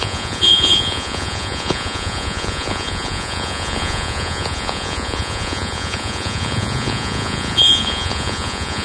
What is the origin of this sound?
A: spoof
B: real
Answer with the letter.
A